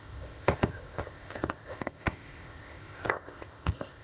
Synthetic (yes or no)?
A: yes